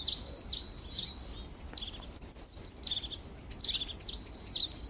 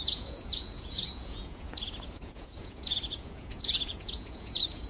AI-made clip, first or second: second